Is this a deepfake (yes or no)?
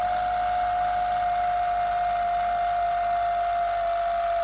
no